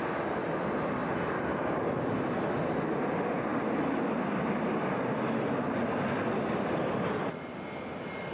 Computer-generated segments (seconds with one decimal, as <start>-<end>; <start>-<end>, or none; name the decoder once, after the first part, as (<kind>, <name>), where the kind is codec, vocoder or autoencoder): none